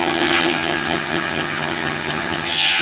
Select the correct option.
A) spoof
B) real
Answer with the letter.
A